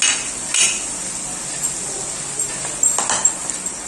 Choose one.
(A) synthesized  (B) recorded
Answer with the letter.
B